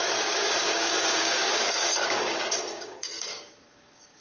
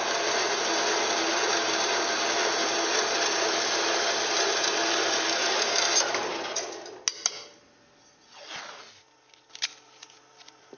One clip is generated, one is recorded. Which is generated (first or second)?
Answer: first